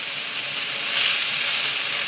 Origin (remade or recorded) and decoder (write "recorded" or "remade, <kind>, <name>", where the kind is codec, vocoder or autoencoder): recorded